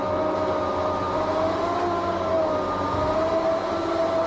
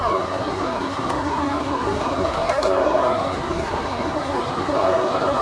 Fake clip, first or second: second